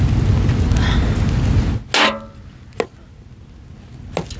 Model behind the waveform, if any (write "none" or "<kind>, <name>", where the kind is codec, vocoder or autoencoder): none